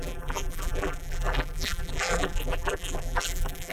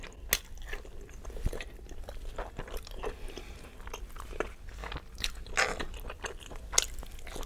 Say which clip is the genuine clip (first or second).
second